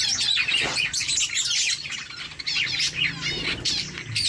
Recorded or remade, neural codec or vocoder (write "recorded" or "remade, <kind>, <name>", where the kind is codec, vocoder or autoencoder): recorded